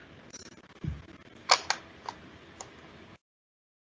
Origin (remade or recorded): recorded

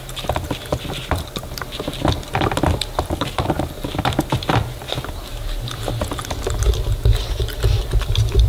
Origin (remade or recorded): recorded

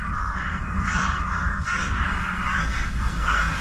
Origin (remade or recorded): remade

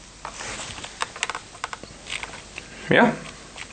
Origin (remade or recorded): recorded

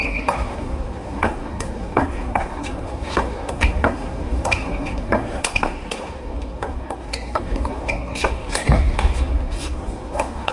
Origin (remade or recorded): remade